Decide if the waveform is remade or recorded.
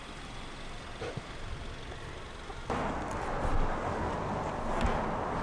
recorded